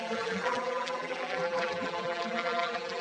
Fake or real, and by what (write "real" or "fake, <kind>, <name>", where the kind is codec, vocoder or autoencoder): fake, vocoder, BigVGAN v2